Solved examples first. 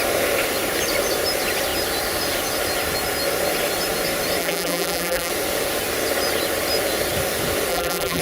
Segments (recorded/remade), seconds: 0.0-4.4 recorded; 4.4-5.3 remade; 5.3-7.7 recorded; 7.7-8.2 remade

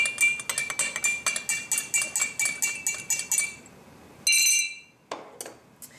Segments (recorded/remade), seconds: 0.0-6.0 recorded

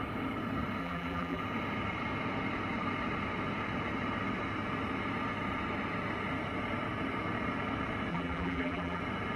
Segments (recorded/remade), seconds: 0.0-0.8 recorded; 0.8-1.4 remade; 1.4-8.1 recorded; 8.1-9.0 remade; 9.0-9.4 recorded